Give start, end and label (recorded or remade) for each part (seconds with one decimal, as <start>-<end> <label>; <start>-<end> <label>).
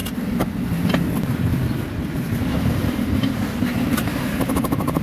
0.0-0.7 recorded; 0.7-5.0 remade